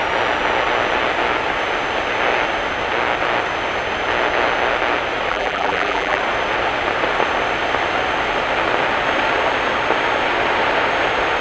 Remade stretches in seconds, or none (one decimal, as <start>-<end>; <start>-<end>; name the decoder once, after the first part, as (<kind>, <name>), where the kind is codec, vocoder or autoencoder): 5.3-6.2 (vocoder, BigVGAN v2)

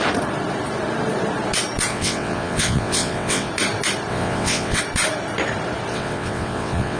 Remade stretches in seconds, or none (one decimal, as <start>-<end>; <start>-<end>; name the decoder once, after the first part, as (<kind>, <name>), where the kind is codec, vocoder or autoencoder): 1.9-3.5 (vocoder, WaveNeXt); 4.1-4.8; 5.9-7.0

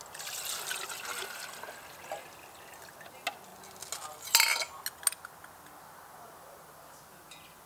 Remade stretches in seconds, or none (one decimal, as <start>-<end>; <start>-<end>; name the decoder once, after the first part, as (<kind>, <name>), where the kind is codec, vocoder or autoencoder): none

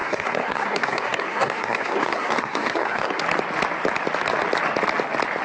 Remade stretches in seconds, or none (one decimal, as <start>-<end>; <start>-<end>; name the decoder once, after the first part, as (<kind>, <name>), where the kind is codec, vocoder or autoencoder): 0.0-3.2 (codec, SNAC)

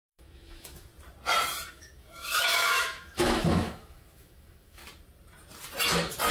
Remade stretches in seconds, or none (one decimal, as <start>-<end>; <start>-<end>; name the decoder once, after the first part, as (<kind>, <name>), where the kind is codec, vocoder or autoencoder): 0.0-0.9 (autoencoder, DAC-VAE); 1.7-4.8